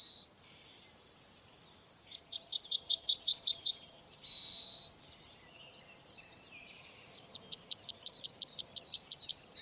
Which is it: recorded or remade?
remade